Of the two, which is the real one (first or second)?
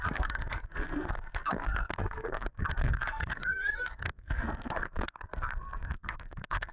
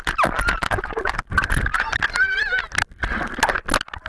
second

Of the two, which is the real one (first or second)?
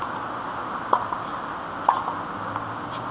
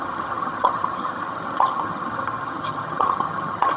first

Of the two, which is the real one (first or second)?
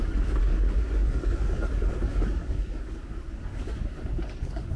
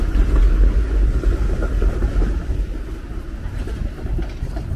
second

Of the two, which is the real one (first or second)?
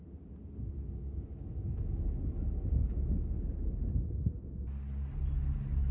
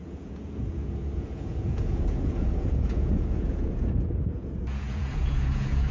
first